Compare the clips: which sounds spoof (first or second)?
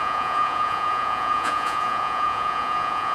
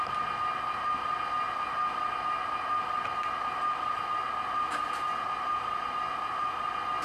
first